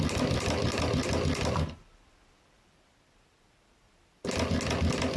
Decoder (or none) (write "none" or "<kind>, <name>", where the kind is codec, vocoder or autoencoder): none